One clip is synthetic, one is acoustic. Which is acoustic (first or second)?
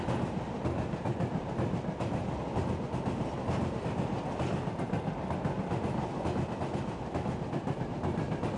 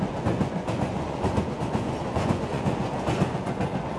first